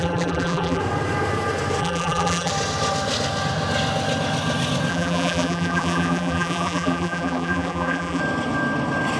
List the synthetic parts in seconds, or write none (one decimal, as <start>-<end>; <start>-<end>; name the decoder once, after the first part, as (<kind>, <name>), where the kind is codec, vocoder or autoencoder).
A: 0.0-0.8 (vocoder, BigVGAN v2); 1.8-2.5; 4.9-8.2